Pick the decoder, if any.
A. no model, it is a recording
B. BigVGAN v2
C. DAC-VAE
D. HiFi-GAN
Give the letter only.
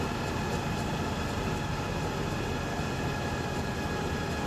A